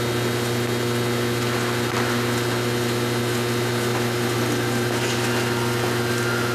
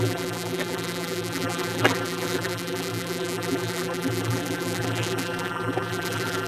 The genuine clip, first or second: first